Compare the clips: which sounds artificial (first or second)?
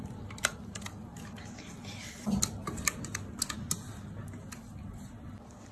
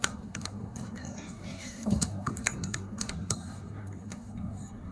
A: second